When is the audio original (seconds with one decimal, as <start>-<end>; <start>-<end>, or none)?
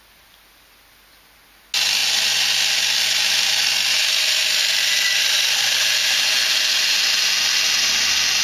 0.0-8.4